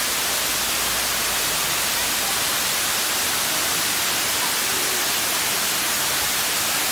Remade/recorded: recorded